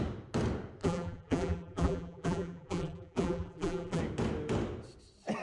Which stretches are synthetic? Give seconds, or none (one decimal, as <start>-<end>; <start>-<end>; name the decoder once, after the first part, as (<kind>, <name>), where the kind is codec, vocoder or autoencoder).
0.8-4.0 (vocoder, BigVGAN v2)